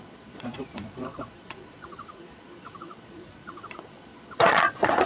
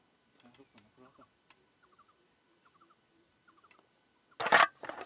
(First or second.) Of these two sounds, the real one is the second